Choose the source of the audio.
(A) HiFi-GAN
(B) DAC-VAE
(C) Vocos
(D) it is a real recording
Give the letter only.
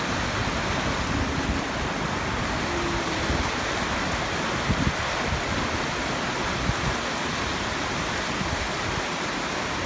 D